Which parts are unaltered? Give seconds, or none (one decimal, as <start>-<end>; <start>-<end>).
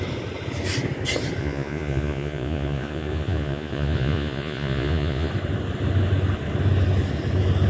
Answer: 0.0-1.4; 5.3-7.7